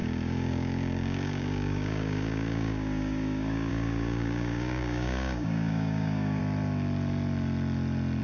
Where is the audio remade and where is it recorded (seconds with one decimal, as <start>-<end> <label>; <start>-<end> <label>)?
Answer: 0.0-6.4 remade; 6.4-8.2 recorded